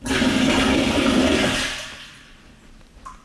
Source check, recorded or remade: remade